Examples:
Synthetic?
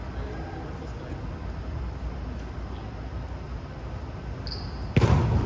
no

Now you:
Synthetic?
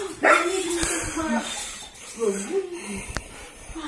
yes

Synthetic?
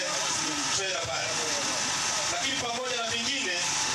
no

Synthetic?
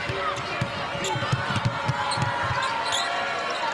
no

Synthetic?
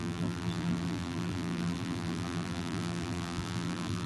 yes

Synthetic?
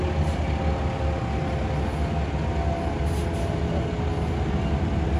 no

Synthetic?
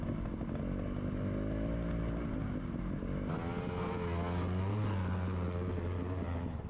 no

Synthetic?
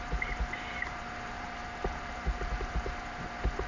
yes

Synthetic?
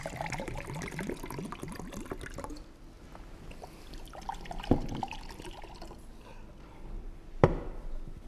no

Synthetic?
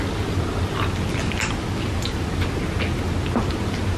no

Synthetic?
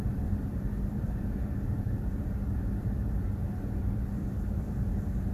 yes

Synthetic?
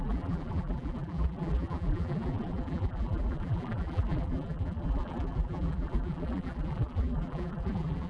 yes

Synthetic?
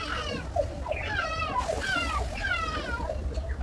no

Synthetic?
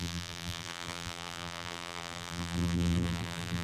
yes